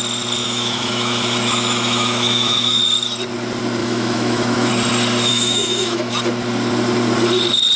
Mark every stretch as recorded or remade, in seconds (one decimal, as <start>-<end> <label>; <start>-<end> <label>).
0.0-0.4 recorded; 0.4-2.8 remade; 2.8-3.8 recorded; 3.8-4.7 remade; 4.7-5.3 recorded; 5.3-6.1 remade; 6.1-7.8 recorded